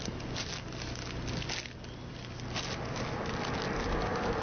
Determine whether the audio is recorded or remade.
recorded